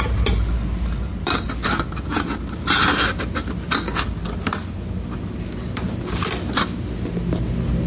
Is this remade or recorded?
recorded